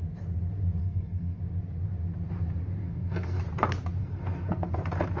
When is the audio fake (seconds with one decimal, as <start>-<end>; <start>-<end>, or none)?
0.8-1.4; 2.8-3.4; 4.0-4.7